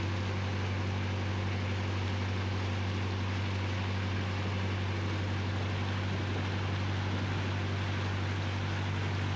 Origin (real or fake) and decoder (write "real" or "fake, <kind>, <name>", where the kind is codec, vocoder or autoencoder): real